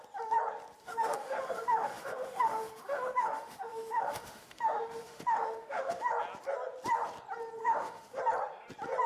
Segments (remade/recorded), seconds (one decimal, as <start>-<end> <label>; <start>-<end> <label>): 0.0-0.8 recorded; 0.8-6.1 remade; 6.1-7.6 recorded; 7.6-8.2 remade; 8.2-9.1 recorded